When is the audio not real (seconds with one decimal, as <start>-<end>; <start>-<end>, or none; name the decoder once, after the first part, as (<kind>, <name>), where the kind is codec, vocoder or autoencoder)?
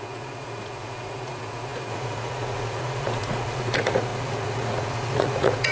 0.0-5.7 (vocoder, Vocos)